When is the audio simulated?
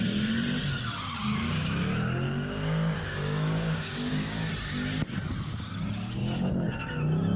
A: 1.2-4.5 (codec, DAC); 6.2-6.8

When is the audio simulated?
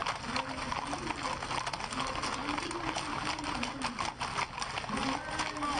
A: none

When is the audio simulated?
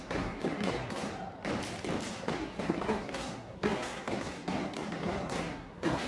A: 0.0-1.1 (codec, SNAC); 2.1-6.1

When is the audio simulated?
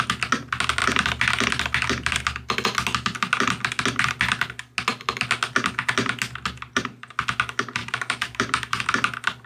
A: 7.8-8.8 (vocoder, BigVGAN v2)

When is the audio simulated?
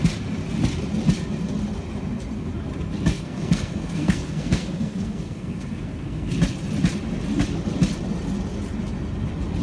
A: 3.1-6.3 (codec, SNAC)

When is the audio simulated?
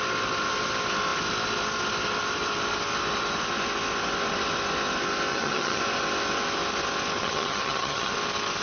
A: 5.3-5.8 (vocoder, HiFi-GAN); 7.2-8.1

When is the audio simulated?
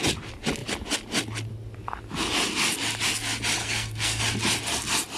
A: 3.6-4.2 (codec, SNAC)